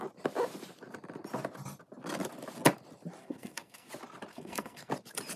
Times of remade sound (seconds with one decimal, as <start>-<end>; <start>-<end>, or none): 3.2-3.9; 4.3-4.9